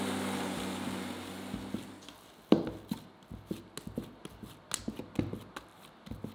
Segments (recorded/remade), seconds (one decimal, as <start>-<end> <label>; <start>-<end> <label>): 0.0-6.3 recorded